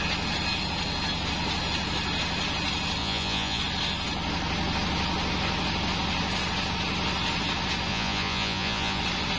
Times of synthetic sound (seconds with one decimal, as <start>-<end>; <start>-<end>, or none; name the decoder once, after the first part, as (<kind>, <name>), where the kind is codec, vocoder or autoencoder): 3.0-3.6 (vocoder, Vocos); 7.9-9.0